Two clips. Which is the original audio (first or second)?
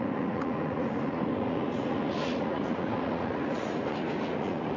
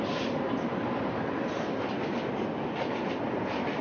second